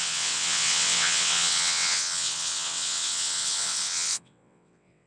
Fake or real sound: fake